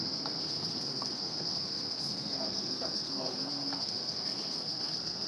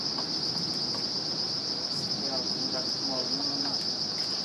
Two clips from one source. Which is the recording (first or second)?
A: second